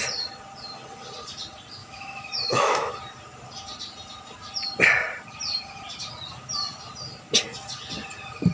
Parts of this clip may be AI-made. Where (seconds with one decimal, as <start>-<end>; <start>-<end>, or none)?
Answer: 1.8-2.9